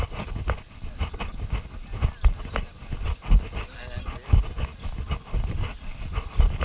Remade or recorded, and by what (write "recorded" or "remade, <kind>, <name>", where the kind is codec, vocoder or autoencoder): recorded